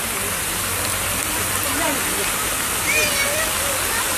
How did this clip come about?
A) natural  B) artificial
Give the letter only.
A